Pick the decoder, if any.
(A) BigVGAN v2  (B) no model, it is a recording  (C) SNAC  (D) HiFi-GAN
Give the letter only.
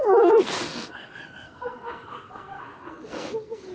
C